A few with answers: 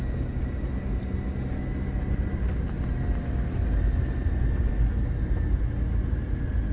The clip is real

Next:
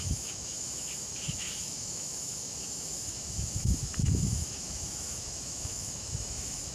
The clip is fake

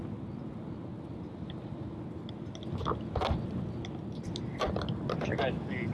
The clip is real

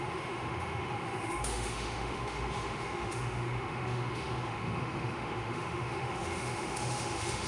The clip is fake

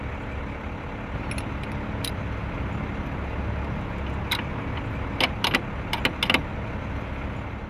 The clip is real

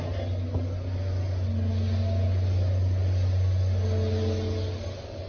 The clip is real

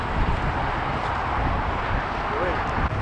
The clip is real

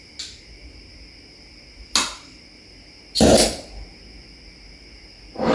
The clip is real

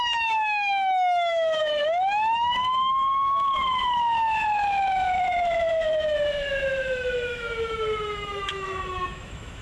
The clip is fake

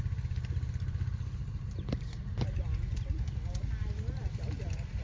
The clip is real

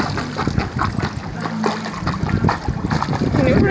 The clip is real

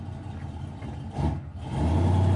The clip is real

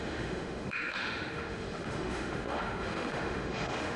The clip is fake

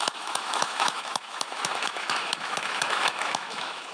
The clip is fake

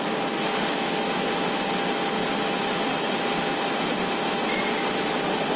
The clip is real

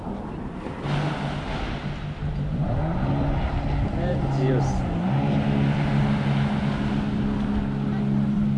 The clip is real